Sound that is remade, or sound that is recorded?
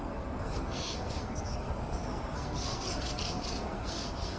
remade